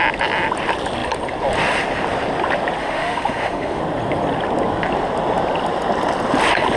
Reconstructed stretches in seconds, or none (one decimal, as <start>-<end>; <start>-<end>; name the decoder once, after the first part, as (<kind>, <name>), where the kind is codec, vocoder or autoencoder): 2.8-3.8 (autoencoder, DAC-VAE)